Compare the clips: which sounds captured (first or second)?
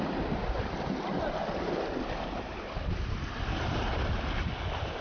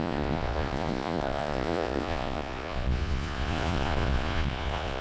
first